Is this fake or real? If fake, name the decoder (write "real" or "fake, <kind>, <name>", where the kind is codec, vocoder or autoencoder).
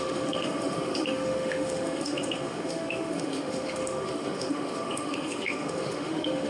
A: fake, autoencoder, DAC-VAE